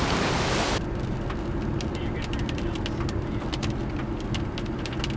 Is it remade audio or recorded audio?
recorded